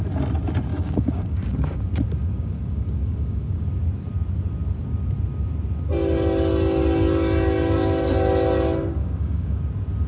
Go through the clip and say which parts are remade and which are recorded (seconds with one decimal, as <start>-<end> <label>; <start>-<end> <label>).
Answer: 0.0-0.7 recorded; 0.7-1.8 remade; 1.8-2.2 recorded; 2.2-3.6 remade; 3.6-8.9 recorded; 8.9-9.6 remade; 9.6-10.1 recorded